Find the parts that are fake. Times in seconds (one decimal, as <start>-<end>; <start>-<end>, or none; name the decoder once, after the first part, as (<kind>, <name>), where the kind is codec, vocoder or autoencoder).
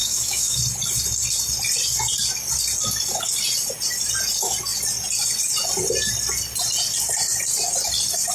0.0-0.6 (autoencoder, DAC-VAE)